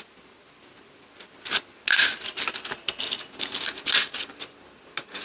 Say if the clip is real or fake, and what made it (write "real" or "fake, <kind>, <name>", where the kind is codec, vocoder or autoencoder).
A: real